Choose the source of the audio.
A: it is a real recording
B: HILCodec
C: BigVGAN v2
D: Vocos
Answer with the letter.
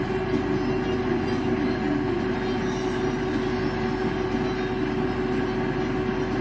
A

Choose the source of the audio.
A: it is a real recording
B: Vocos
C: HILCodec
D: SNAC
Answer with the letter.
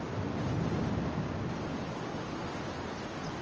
A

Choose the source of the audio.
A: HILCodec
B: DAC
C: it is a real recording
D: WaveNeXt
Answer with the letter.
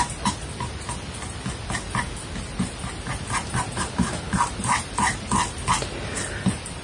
C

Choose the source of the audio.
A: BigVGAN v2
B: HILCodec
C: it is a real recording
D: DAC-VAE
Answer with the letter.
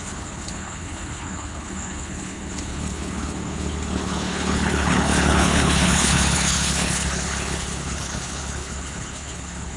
B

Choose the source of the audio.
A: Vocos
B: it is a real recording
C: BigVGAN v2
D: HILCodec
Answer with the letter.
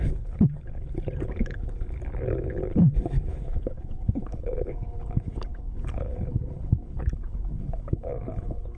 D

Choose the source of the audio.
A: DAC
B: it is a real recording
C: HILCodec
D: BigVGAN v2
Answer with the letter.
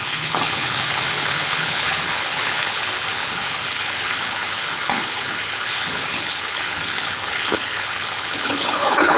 C